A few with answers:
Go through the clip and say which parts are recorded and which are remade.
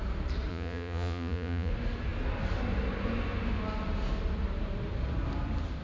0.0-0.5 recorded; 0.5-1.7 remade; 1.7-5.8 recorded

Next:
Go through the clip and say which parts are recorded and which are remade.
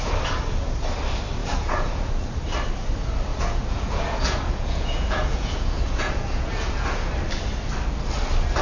0.0-1.4 recorded; 1.4-2.1 remade; 2.1-3.3 recorded; 3.3-7.1 remade; 7.1-8.6 recorded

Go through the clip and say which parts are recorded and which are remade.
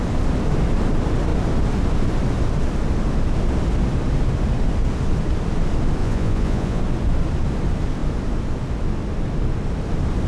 0.0-6.0 recorded; 6.0-6.8 remade; 6.8-10.3 recorded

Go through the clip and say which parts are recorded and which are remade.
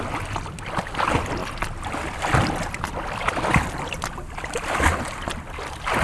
0.0-6.0 recorded